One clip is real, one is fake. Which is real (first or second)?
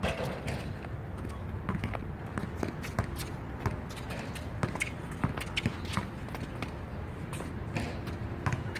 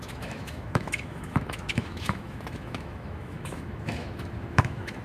first